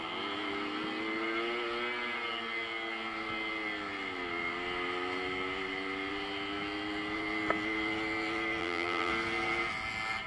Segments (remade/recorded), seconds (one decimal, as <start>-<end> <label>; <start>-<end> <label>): 0.0-8.6 recorded; 8.6-9.1 remade; 9.1-10.3 recorded